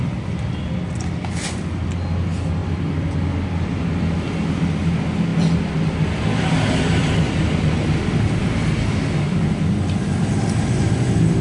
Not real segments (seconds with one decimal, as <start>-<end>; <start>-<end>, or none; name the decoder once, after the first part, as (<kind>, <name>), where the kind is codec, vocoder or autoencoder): 2.6-3.1 (vocoder, BigVGAN v2); 5.3-10.3